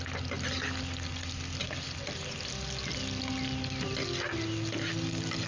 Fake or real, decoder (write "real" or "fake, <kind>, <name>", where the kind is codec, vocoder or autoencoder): real